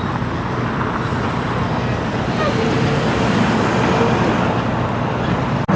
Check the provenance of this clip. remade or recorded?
remade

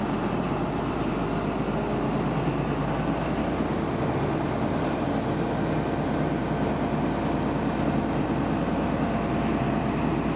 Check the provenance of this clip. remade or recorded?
recorded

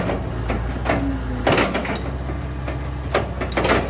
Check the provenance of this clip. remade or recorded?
recorded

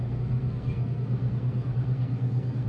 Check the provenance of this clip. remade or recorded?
remade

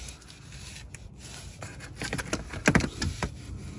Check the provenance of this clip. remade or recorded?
recorded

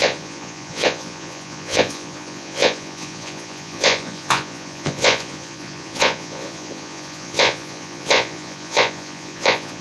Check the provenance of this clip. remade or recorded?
remade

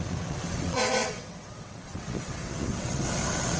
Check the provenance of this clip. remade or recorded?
remade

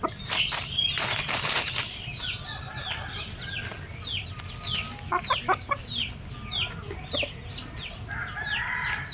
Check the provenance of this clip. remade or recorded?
recorded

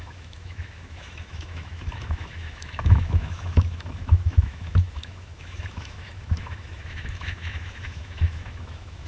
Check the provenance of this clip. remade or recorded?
remade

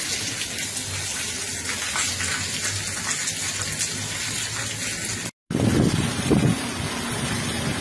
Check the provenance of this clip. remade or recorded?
recorded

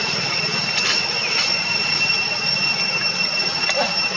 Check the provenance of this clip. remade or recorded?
recorded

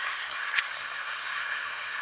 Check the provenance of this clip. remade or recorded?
remade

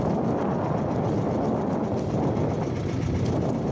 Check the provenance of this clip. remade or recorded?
recorded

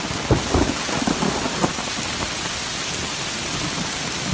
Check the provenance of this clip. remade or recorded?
recorded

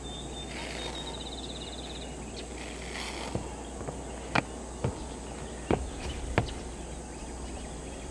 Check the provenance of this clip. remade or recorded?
recorded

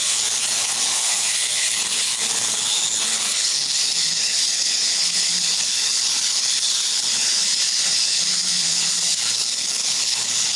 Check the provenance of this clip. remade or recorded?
remade